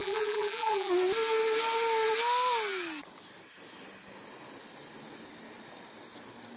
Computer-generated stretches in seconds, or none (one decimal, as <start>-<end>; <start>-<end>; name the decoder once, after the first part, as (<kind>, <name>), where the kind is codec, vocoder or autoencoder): 0.0-0.9 (vocoder, BigVGAN v2)